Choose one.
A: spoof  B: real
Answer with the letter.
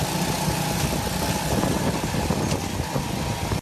B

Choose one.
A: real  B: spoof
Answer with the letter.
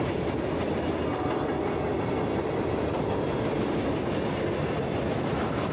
A